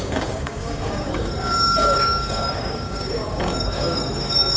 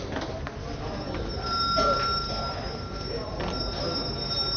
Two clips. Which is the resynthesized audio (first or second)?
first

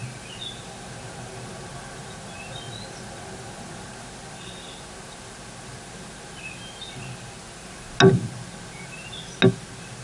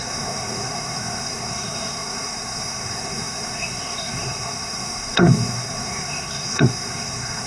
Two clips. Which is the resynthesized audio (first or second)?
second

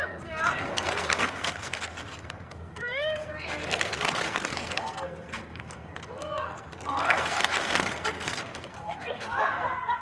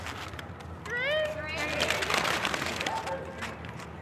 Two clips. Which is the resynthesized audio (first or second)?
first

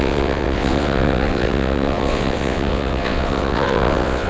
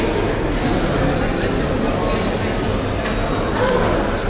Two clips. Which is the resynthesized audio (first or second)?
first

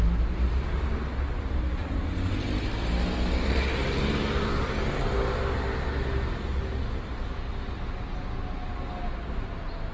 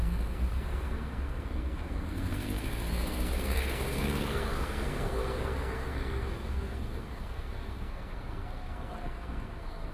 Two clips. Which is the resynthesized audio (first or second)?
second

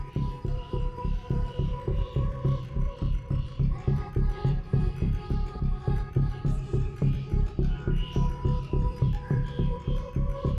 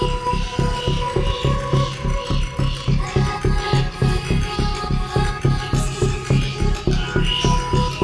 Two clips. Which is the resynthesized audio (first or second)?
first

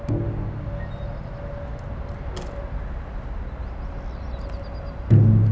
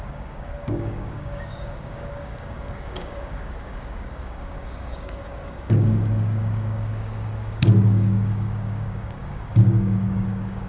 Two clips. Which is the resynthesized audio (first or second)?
second